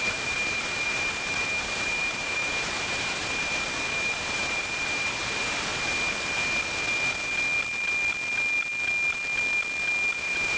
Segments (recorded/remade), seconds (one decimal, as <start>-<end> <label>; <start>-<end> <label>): 0.0-5.7 remade; 5.7-10.2 recorded; 10.2-10.6 remade